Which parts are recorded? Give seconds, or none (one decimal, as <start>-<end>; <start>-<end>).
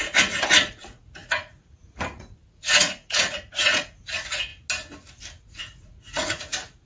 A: 4.5-5.4